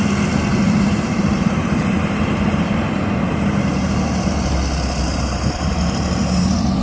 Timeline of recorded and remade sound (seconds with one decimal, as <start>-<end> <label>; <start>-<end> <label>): 0.0-0.5 recorded; 0.5-4.6 remade; 4.6-5.1 recorded; 5.1-6.8 remade